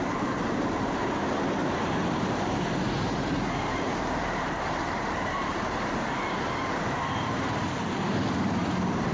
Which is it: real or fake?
fake